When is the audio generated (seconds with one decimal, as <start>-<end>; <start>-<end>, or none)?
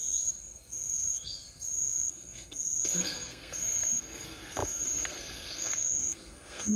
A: 0.0-6.8